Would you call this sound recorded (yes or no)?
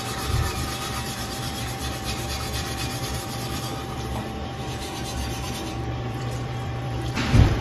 no